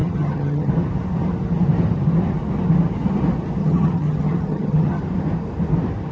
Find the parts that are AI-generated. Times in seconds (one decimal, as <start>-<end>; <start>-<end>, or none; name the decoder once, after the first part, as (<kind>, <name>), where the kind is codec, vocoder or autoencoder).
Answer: 0.0-0.7 (vocoder, HiFi-GAN); 3.6-5.0